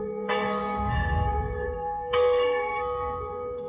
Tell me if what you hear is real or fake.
fake